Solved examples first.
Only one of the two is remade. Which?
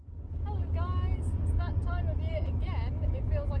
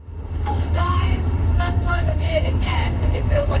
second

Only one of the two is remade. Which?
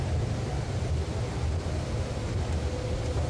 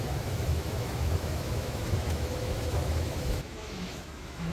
second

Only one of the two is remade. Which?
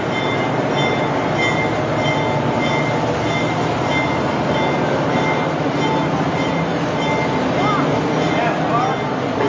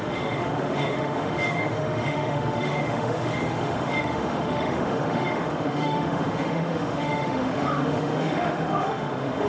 second